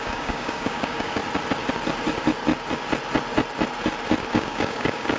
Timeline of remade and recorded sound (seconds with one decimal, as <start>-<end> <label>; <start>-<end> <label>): 0.0-1.2 remade; 1.2-4.3 recorded; 4.3-5.2 remade